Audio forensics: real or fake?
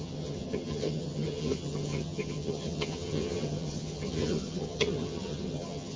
fake